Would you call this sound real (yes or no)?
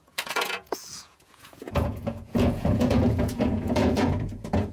no